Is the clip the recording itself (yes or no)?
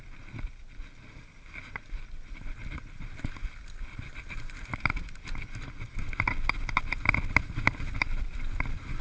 yes